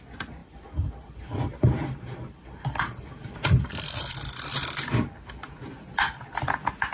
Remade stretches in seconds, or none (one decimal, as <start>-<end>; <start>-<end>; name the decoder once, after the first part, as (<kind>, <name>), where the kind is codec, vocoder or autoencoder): 0.4-4.2 (vocoder, BigVGAN v2)